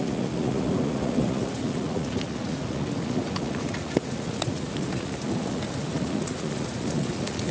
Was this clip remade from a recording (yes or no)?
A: yes